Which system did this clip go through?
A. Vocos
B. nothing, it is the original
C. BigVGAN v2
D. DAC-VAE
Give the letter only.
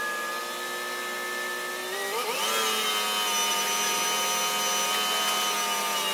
B